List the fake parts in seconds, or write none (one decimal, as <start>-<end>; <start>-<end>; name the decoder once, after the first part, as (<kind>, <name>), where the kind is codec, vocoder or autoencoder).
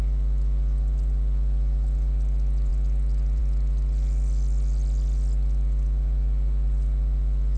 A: none